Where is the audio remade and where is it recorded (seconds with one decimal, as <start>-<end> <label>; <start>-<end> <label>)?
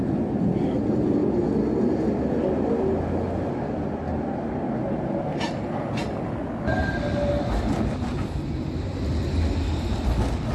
0.0-10.5 recorded